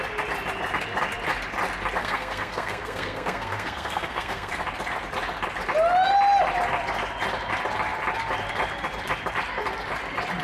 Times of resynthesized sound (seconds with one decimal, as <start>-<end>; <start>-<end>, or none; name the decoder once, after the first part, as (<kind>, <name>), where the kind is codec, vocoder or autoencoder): 2.0-4.5 (codec, SNAC)